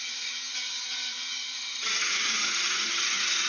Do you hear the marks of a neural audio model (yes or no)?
yes